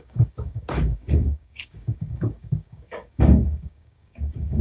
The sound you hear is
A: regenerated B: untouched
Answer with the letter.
A